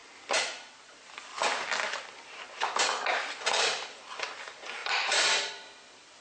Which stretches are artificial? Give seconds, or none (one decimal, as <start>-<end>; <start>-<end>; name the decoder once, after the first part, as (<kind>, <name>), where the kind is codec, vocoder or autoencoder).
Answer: 0.7-6.2 (vocoder, BigVGAN v2)